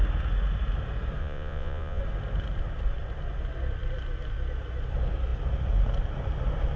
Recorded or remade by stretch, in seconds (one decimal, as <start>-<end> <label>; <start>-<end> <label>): 0.0-1.2 recorded; 1.2-2.0 remade; 2.0-6.8 recorded